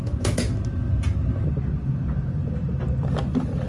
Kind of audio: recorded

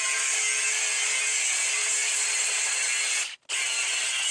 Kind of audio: recorded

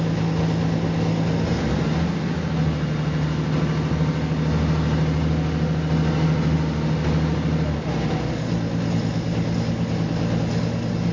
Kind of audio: recorded